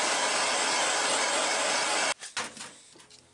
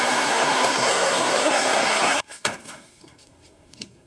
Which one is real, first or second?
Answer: first